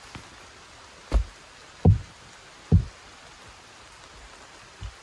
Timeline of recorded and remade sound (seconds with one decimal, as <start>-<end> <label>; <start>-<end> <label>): 0.0-5.0 recorded